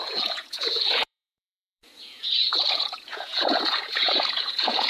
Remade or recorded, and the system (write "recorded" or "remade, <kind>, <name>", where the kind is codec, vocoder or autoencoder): remade, vocoder, Vocos